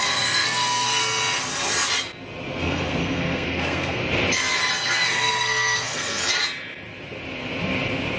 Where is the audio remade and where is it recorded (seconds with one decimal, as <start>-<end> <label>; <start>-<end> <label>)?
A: 0.0-1.0 remade; 1.0-2.6 recorded; 2.6-4.0 remade; 4.0-4.7 recorded; 4.7-6.2 remade; 6.2-8.2 recorded